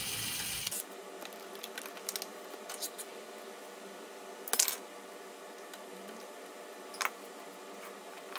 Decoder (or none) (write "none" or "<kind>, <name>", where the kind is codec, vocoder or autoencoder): none